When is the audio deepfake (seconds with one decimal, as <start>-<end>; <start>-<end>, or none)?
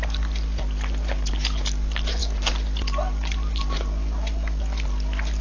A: none